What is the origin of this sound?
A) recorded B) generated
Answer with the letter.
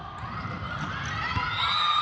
A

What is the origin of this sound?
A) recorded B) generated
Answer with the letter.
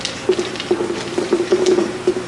A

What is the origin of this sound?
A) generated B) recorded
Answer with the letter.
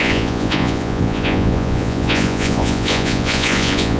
A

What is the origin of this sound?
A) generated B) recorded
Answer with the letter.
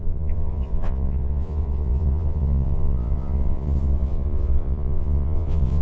A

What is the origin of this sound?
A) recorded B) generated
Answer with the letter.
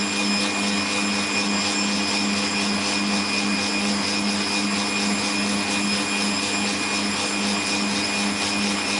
A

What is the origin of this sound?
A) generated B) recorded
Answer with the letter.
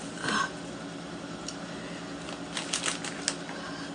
B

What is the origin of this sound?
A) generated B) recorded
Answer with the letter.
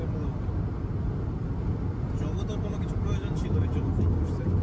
B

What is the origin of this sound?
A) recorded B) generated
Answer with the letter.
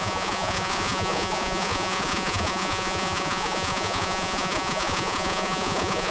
B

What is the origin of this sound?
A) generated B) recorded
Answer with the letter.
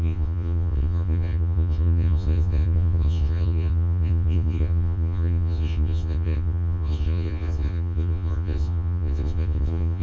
A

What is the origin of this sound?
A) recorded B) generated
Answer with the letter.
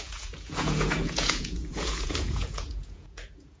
B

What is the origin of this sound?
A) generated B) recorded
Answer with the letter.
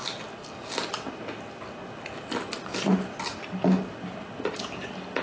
B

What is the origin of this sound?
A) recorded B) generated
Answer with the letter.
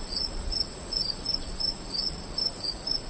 B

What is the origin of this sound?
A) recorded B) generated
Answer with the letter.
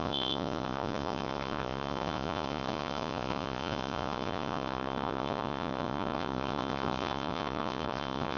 B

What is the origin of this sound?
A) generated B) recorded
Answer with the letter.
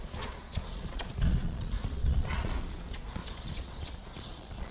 A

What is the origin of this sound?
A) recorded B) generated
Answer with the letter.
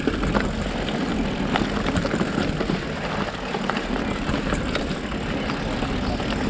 A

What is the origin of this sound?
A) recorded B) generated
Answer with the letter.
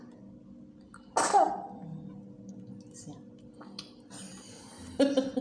A